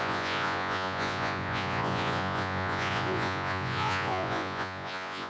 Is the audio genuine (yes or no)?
no